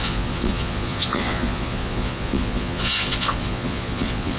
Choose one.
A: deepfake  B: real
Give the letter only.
A